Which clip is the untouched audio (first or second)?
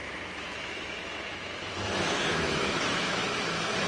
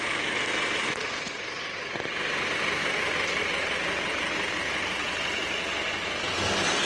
second